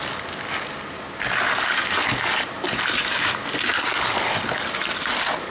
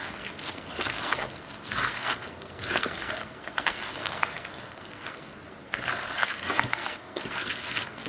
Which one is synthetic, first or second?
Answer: second